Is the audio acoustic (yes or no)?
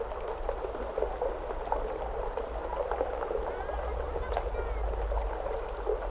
yes